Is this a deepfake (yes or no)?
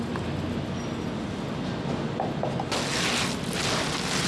no